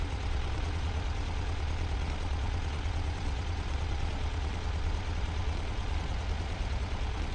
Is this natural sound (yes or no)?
no